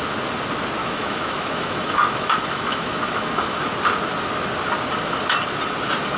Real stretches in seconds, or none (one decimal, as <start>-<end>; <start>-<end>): 0.0-0.8; 3.7-6.2